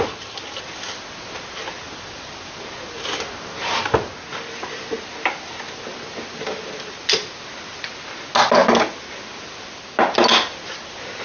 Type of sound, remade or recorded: recorded